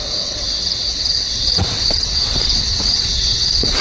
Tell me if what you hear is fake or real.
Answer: fake